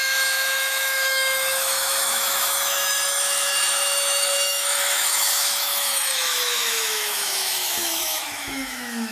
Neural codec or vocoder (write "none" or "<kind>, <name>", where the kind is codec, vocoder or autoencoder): autoencoder, DAC-VAE